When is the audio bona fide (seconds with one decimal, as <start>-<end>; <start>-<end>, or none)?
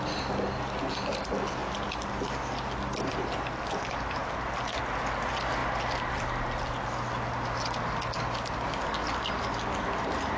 0.0-10.4